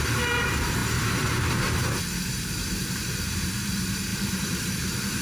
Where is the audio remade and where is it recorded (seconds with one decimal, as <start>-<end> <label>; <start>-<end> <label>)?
0.0-5.2 remade